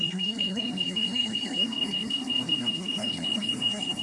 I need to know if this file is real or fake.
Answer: fake